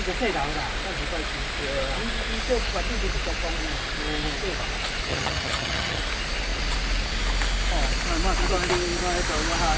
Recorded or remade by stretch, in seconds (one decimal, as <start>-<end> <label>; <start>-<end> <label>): 0.0-5.1 recorded; 5.1-6.0 remade; 6.0-9.8 recorded